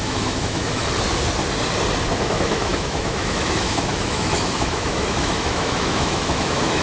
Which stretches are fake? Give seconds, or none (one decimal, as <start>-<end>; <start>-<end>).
0.0-0.8; 2.2-6.8